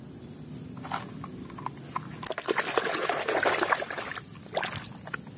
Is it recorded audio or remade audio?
recorded